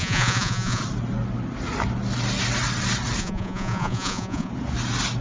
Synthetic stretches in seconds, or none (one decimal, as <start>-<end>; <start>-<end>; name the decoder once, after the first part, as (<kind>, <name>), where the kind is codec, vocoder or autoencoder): 0.0-0.8 (vocoder, Vocos); 3.2-4.5